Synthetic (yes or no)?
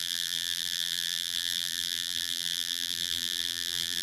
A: yes